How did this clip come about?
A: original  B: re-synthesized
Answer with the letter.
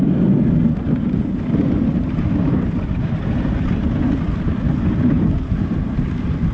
A